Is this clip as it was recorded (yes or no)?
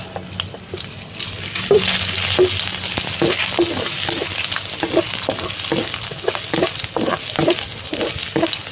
yes